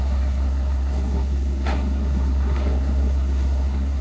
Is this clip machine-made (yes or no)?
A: yes